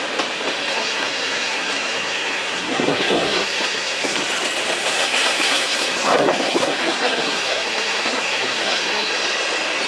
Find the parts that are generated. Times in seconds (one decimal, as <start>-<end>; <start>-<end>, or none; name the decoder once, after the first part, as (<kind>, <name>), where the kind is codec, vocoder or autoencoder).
0.7-4.2 (codec, SNAC); 4.8-9.1